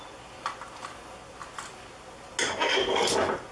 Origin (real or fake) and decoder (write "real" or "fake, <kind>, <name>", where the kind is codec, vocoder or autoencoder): real